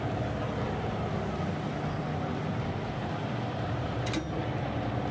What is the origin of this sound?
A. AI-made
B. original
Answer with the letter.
B